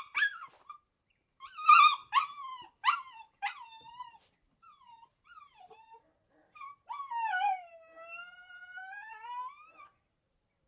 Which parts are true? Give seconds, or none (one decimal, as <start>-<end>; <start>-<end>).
6.4-7.3

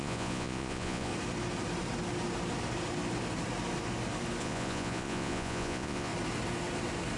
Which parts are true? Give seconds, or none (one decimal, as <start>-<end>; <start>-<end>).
1.1-4.4; 6.1-7.2

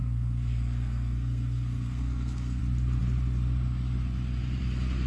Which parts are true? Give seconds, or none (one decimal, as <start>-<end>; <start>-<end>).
2.6-5.1